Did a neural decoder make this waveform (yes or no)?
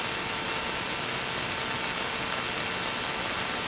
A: no